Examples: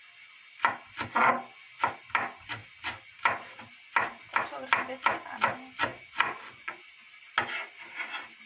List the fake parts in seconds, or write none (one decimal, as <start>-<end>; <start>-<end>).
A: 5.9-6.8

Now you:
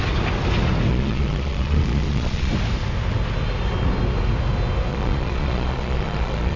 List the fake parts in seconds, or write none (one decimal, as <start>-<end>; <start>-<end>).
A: 0.9-2.5; 4.9-6.6

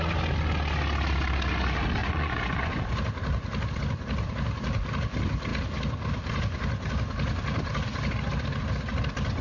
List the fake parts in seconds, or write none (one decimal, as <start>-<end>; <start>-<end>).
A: 2.0-2.8

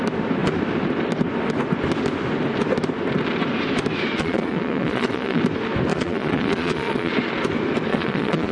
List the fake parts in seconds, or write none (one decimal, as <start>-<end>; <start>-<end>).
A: 4.2-5.4; 5.9-7.1; 7.9-8.5

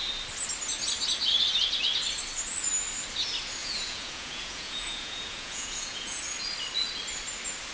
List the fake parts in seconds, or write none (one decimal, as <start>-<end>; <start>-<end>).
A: 3.6-6.2

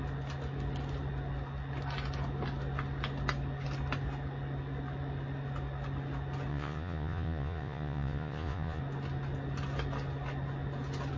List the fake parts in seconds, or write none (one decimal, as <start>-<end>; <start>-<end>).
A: 6.5-8.8

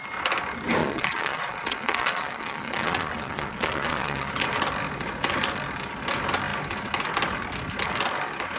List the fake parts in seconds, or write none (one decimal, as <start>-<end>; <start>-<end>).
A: 0.8-4.3